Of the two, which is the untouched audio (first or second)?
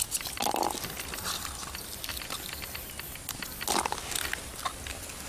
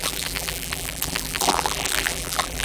first